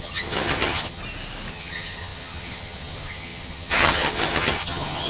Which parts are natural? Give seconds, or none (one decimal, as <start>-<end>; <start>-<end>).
1.0-1.5